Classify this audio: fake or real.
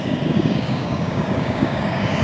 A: fake